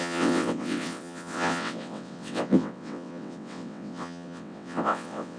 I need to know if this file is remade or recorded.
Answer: remade